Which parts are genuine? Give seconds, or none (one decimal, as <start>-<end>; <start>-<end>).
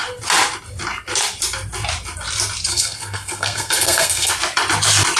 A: 0.0-2.7; 4.3-5.2